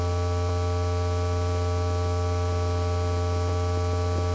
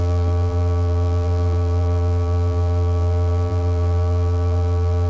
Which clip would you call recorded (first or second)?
first